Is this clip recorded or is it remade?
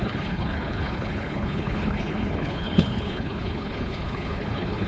remade